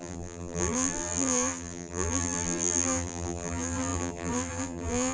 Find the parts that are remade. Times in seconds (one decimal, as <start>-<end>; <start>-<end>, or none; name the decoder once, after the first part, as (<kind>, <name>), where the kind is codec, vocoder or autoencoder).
0.0-5.1 (vocoder, BigVGAN v2)